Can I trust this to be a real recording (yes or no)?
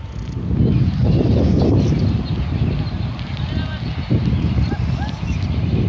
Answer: yes